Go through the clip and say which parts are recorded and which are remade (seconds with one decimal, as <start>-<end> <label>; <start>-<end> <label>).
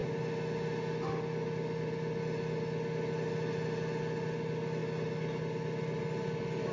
0.0-6.7 recorded